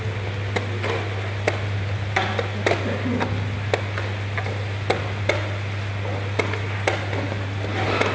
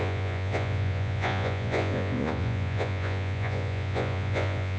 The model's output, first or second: second